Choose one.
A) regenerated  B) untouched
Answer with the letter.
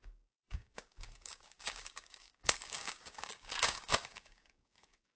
A